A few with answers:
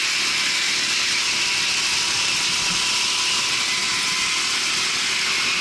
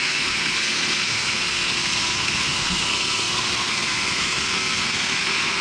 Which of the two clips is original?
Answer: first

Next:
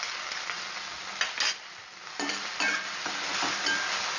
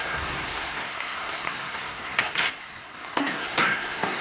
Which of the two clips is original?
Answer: first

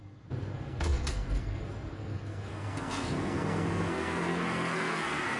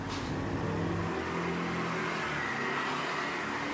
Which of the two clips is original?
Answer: second